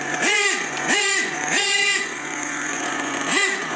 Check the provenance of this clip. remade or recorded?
remade